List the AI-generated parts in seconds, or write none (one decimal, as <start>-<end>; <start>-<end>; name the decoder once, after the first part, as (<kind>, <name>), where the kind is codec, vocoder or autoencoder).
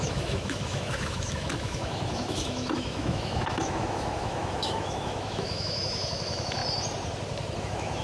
0.0-6.6 (autoencoder, DAC-VAE); 7.6-8.0